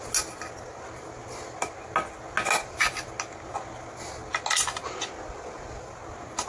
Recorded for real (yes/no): yes